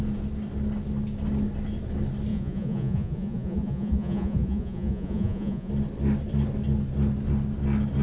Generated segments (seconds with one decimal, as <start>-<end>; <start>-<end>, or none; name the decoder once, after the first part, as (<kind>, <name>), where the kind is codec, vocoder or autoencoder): 2.3-5.7 (vocoder, Vocos)